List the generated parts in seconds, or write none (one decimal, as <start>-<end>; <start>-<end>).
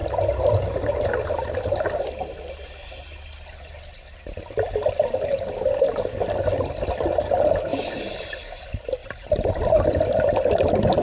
7.7-8.3; 9.0-11.0